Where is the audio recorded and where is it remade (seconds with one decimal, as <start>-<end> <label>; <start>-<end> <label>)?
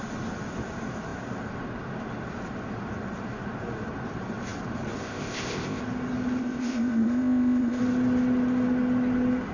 0.0-5.0 recorded; 5.0-5.8 remade; 5.8-6.4 recorded; 6.4-7.8 remade; 7.8-9.5 recorded